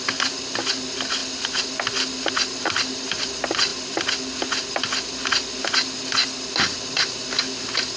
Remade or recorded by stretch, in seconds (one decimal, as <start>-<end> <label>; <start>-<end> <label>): 0.0-8.0 recorded